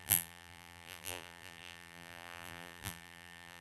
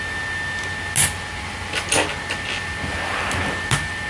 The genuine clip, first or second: second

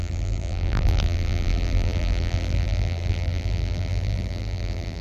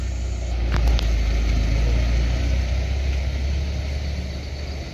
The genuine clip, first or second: second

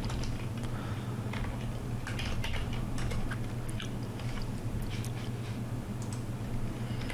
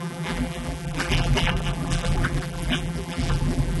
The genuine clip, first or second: first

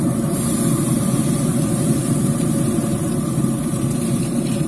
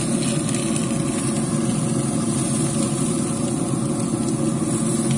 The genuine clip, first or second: second